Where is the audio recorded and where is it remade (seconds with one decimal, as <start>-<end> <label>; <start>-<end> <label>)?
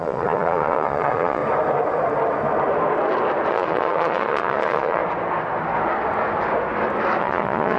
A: 0.0-1.4 remade; 1.4-3.5 recorded; 3.5-5.0 remade; 5.0-7.2 recorded; 7.2-7.8 remade